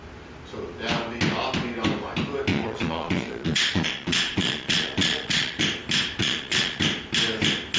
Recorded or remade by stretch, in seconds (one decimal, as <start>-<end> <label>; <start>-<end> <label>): 0.0-2.5 recorded; 2.5-5.6 remade; 5.6-6.2 recorded; 6.2-6.8 remade; 6.8-7.8 recorded